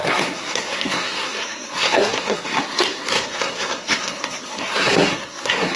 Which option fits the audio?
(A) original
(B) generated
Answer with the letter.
B